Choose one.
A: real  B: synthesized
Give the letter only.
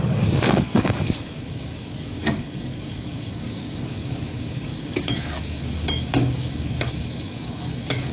B